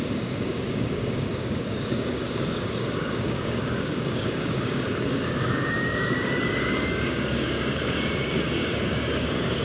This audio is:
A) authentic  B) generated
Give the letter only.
B